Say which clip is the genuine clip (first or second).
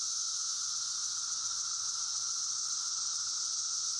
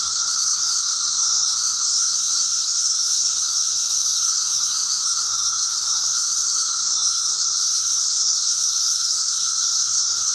first